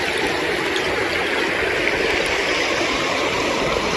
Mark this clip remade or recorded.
recorded